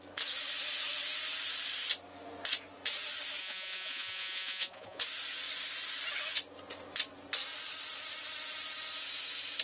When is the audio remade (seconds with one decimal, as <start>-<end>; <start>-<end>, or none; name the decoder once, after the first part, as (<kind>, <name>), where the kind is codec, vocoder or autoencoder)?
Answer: 3.4-5.0 (vocoder, Vocos)